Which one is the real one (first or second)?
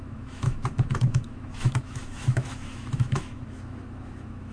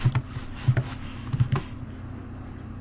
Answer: second